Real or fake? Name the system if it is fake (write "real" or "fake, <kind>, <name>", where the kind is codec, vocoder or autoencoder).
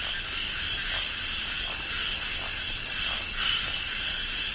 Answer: fake, vocoder, BigVGAN v2